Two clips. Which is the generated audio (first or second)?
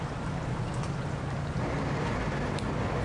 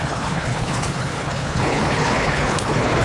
second